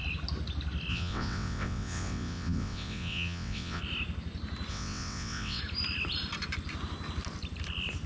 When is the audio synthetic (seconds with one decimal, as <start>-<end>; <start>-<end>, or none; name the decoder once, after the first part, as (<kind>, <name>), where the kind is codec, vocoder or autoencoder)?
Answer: 0.9-3.8 (vocoder, WaveNeXt); 4.7-5.6